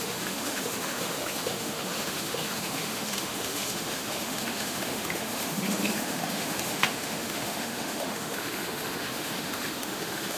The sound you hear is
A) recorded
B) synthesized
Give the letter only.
B